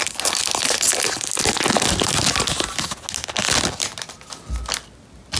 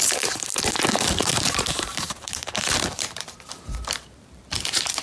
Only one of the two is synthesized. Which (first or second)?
second